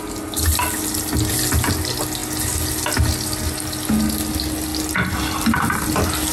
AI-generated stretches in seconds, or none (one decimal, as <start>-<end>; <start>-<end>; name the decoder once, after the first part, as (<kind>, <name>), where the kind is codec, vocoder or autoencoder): none